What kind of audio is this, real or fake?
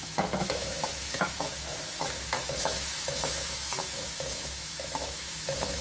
fake